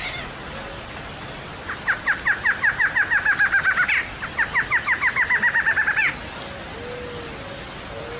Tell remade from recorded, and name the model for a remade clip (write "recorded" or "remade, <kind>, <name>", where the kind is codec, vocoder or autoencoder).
recorded